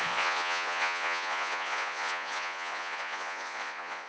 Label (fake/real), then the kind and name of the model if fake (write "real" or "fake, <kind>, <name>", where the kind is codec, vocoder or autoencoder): fake, vocoder, Vocos